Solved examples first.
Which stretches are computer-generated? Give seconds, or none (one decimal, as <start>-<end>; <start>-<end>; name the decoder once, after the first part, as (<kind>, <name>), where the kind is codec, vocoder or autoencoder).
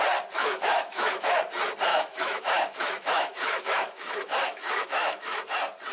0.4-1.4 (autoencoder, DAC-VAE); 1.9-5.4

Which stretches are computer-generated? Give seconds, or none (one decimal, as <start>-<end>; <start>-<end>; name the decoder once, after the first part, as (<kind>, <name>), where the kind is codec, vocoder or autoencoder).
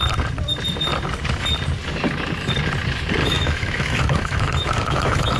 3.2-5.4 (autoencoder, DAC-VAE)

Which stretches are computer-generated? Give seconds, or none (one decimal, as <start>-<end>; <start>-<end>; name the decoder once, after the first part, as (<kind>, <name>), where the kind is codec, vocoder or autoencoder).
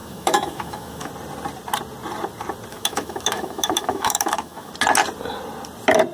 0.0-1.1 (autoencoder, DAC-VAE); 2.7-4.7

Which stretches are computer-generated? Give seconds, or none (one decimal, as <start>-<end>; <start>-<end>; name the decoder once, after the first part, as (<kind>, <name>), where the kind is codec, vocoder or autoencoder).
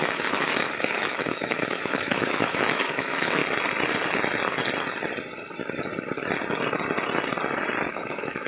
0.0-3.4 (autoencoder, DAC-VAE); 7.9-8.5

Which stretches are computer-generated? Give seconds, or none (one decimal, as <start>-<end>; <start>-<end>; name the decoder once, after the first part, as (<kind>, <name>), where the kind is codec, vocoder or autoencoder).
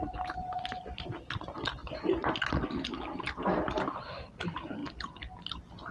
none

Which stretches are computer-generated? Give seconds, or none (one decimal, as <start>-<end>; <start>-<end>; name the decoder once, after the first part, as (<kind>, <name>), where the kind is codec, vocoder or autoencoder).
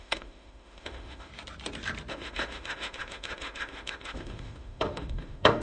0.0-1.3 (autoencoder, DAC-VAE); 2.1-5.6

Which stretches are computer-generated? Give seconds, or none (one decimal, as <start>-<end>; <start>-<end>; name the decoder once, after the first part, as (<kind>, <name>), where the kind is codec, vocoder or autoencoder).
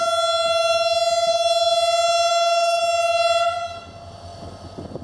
2.3-2.8 (autoencoder, DAC-VAE)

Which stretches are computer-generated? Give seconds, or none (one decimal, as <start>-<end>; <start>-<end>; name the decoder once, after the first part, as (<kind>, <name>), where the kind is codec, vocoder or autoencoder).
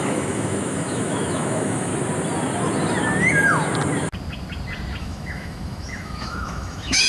0.0-1.9 (autoencoder, DAC-VAE); 5.0-7.1